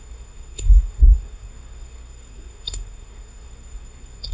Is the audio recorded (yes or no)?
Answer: no